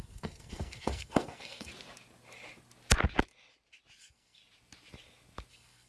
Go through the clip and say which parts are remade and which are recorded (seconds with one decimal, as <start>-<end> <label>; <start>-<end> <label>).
0.0-1.7 remade; 1.7-4.0 recorded; 4.0-4.4 remade; 4.4-5.5 recorded; 5.5-5.9 remade